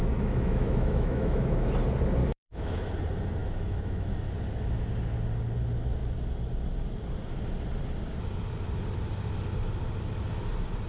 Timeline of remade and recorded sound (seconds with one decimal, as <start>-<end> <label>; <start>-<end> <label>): 0.0-1.7 remade; 1.7-2.2 recorded; 2.2-2.9 remade; 2.9-3.4 recorded; 3.4-4.1 remade; 4.1-10.9 recorded